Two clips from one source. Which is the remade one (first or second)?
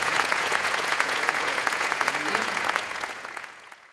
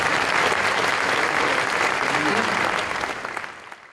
first